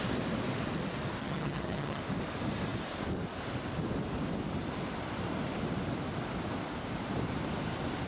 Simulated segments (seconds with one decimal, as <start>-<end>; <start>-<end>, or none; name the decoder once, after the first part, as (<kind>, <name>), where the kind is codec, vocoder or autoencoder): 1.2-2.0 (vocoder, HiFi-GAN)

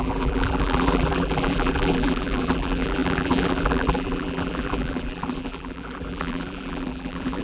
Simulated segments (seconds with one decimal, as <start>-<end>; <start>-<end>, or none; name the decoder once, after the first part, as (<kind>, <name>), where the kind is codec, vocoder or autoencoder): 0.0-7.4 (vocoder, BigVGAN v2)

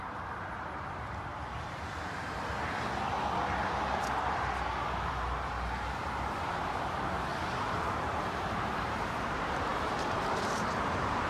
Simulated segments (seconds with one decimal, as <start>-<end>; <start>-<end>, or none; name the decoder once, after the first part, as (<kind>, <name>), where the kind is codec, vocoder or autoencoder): 0.0-1.3 (vocoder, BigVGAN v2); 6.4-7.3; 7.9-11.3